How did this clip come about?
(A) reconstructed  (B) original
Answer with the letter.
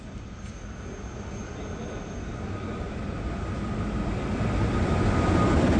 B